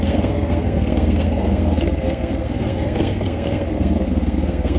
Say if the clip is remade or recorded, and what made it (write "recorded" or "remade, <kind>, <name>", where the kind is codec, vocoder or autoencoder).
remade, codec, SNAC